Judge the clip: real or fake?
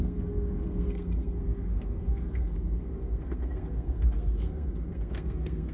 fake